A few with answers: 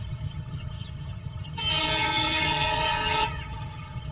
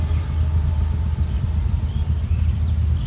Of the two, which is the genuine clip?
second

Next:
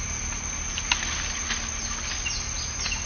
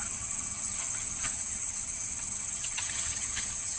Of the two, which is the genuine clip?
first